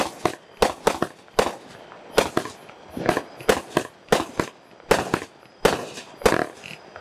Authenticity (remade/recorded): recorded